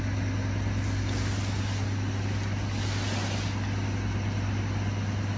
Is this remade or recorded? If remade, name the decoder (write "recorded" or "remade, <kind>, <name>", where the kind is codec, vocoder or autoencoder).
recorded